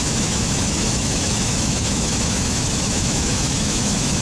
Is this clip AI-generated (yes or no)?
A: yes